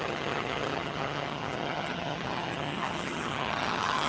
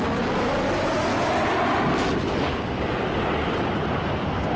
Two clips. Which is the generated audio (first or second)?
first